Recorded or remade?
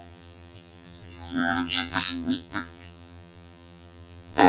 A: remade